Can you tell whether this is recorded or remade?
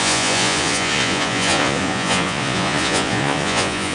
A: remade